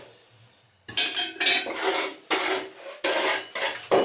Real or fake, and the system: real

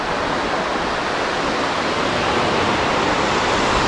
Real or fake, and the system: real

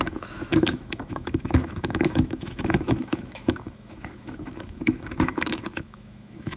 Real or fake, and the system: fake, autoencoder, DAC-VAE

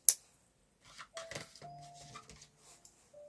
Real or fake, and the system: real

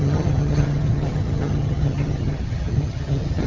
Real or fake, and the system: fake, vocoder, HiFi-GAN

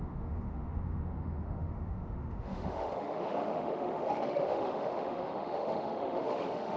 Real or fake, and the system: fake, autoencoder, DAC-VAE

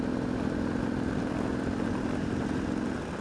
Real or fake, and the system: real